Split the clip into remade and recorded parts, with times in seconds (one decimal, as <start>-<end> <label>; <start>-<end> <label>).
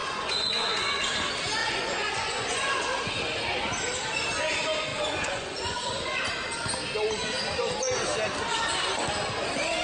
0.0-1.0 remade; 1.0-1.6 recorded; 1.6-2.8 remade; 2.8-4.9 recorded; 4.9-6.3 remade; 6.3-9.8 recorded